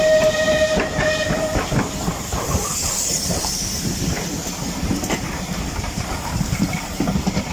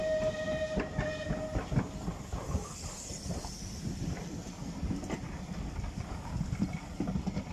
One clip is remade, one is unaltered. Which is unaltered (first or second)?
second